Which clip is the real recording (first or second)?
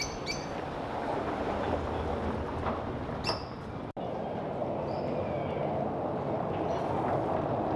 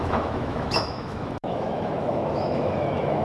first